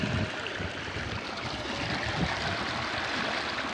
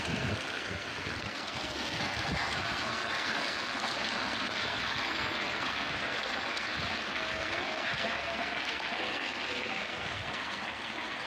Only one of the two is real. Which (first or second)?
first